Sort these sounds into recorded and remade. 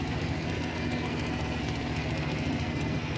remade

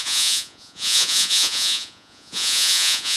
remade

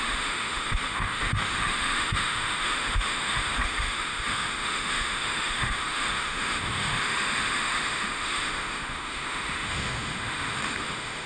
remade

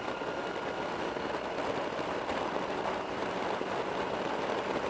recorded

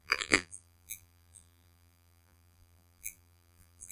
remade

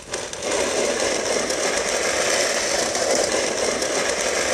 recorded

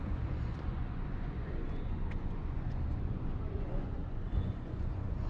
remade